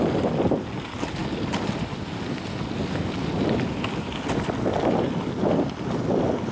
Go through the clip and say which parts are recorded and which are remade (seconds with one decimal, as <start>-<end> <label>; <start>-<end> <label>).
0.0-6.5 recorded